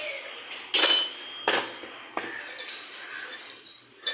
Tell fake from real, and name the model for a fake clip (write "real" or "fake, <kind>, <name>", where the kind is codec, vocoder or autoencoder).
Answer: real